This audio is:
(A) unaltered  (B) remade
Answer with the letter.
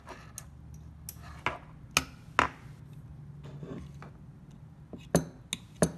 A